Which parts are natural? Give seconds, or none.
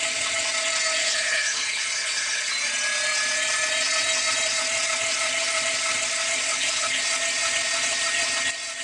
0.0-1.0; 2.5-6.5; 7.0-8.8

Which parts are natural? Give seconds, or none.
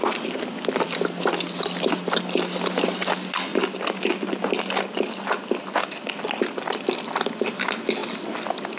0.0-8.8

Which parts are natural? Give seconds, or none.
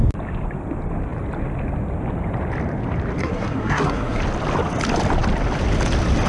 0.0-3.2; 4.2-6.3